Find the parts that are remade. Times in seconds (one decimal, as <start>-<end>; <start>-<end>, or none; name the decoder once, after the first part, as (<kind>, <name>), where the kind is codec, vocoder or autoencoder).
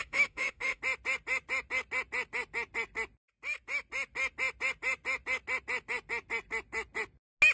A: 0.0-0.8 (autoencoder, DAC-VAE)